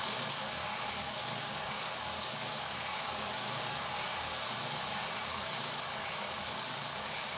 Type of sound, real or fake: fake